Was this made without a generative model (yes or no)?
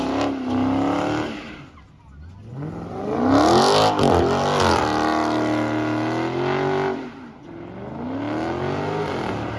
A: yes